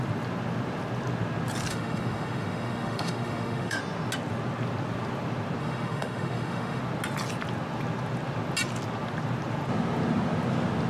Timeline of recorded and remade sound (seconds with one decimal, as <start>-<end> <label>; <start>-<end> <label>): 0.0-1.7 recorded; 1.7-3.8 remade; 3.8-5.6 recorded; 5.6-6.8 remade; 6.8-10.9 recorded